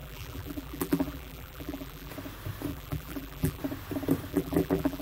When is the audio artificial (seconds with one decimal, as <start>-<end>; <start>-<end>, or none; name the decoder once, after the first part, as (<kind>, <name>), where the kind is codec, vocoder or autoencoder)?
0.0-2.1 (vocoder, BigVGAN v2); 2.7-3.6; 4.3-5.0